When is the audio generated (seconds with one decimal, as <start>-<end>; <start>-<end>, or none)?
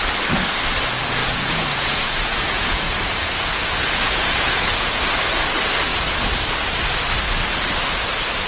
1.2-5.0